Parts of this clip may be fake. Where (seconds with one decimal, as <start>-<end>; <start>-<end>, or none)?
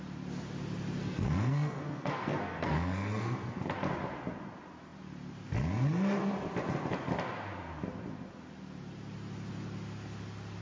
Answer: 1.0-3.6